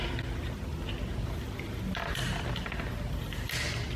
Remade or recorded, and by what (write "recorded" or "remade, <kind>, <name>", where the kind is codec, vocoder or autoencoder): recorded